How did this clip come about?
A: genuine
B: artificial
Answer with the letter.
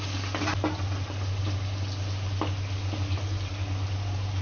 A